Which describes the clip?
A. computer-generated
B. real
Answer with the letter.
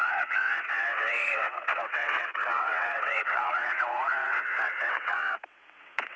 A